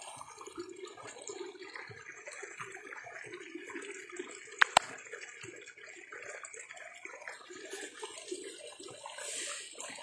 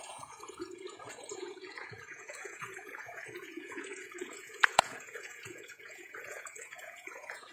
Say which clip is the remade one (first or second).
second